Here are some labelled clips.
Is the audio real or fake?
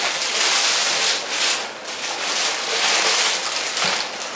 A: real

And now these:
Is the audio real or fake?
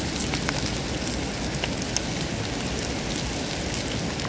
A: real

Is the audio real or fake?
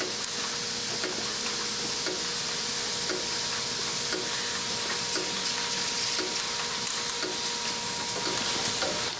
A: real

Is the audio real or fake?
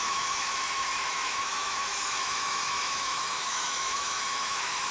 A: fake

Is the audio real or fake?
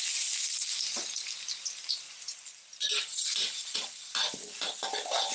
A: real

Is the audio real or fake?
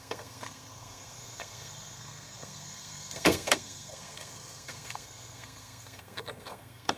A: fake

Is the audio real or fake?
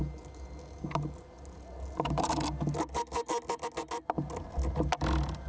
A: real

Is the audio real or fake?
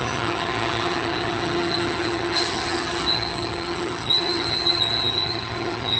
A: fake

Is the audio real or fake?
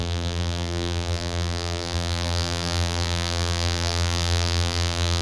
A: fake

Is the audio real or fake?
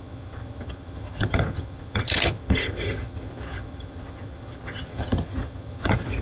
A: fake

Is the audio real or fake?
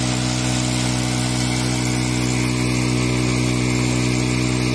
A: real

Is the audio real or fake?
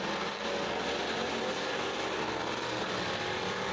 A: real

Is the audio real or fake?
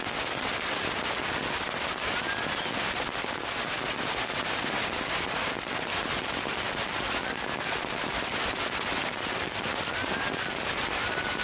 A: real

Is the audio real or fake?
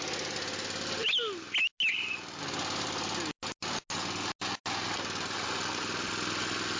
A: real